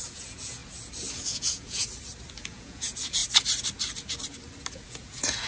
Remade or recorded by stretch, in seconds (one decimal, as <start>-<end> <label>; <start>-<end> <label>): 0.0-0.6 remade; 0.6-1.1 recorded; 1.1-1.8 remade; 1.8-2.5 recorded; 2.5-3.2 remade; 3.2-4.7 recorded; 4.7-5.5 remade